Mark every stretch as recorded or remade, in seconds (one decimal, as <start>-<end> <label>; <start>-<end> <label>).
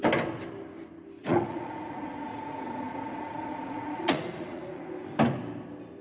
0.0-1.2 recorded; 1.2-4.8 remade; 4.8-6.0 recorded